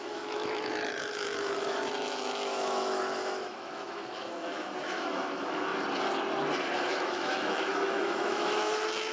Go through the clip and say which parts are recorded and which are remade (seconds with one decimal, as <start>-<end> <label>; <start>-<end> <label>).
0.0-5.7 remade; 5.7-6.9 recorded; 6.9-9.1 remade